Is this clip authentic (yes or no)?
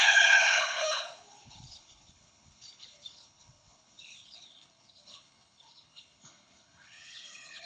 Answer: no